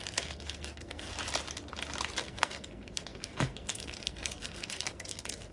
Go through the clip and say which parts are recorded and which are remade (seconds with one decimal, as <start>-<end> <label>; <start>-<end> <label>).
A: 0.0-1.1 remade; 1.1-2.2 recorded; 2.2-5.5 remade